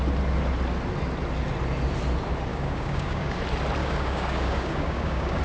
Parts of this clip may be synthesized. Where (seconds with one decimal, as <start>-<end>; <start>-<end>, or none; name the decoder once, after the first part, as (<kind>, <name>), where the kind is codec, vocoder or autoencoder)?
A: 2.5-3.4 (codec, DAC); 3.8-5.4